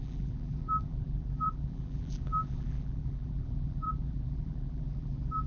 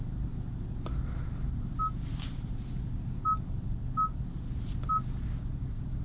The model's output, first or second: first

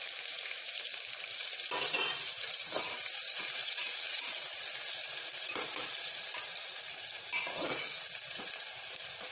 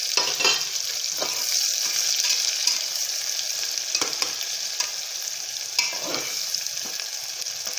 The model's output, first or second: first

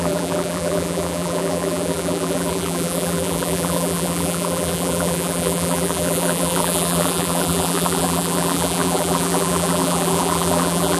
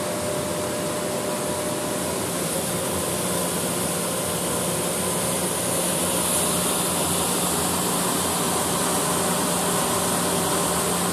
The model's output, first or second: first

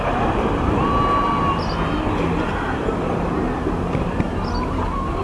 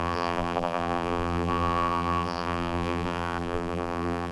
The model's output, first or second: second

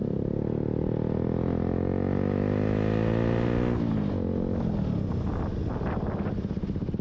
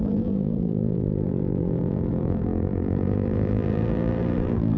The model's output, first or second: second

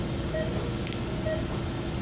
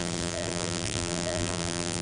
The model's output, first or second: second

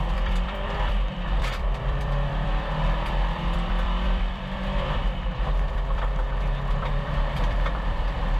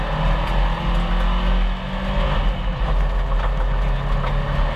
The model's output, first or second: first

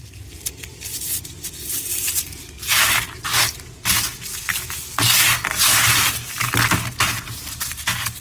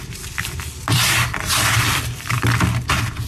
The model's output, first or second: second